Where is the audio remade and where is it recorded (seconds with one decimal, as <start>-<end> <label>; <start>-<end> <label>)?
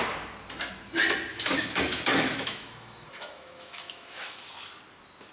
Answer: 0.0-1.3 recorded; 1.3-4.5 remade; 4.5-5.3 recorded